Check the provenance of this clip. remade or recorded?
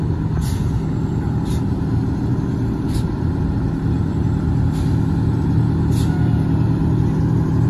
recorded